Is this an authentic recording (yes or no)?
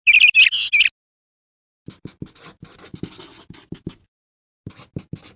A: yes